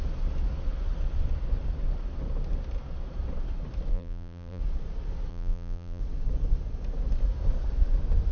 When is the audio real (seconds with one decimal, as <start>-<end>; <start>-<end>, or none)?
0.0-3.9; 4.6-5.3; 6.0-8.3

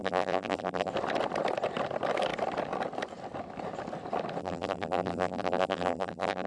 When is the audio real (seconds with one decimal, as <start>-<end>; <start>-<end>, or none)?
0.9-4.4

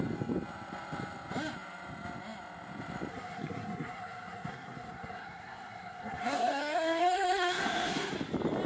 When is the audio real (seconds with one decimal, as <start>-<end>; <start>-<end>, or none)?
0.0-3.1; 8.1-8.7

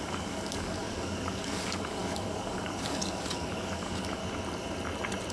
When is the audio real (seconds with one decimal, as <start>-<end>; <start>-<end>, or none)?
4.2-5.3